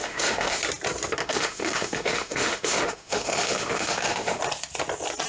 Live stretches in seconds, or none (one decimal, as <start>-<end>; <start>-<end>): 0.6-1.2; 4.4-5.3